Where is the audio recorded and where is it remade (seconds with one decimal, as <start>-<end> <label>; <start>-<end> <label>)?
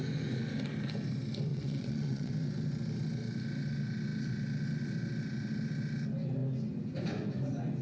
0.0-1.5 recorded; 1.5-2.3 remade; 2.3-7.8 recorded